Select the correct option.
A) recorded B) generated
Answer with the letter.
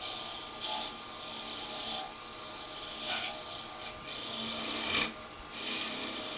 A